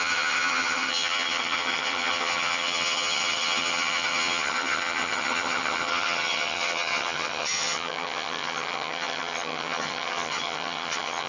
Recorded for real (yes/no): no